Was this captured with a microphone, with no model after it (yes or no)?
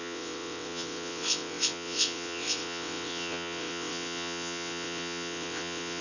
no